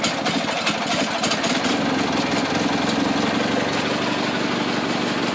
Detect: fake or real real